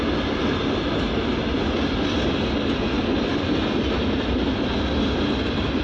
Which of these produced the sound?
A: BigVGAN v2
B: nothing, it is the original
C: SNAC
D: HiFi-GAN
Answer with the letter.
B